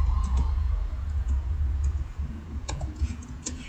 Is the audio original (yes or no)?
no